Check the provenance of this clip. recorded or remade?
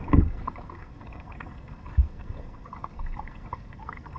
remade